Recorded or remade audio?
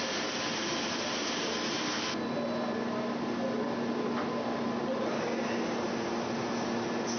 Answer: recorded